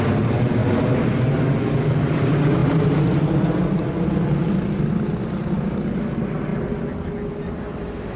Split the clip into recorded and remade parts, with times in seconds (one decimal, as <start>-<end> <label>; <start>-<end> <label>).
0.0-0.6 recorded; 0.6-1.4 remade; 1.4-8.2 recorded